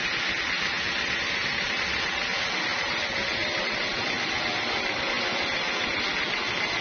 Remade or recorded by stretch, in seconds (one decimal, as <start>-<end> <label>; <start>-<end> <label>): 0.0-6.8 recorded